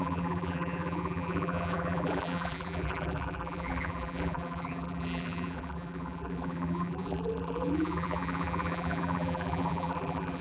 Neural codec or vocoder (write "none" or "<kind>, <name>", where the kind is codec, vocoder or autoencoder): vocoder, BigVGAN v2